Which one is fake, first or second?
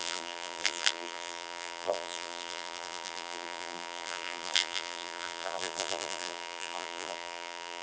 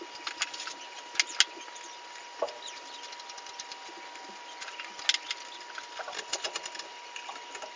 first